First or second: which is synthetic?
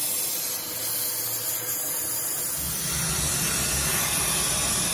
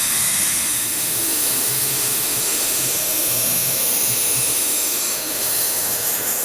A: second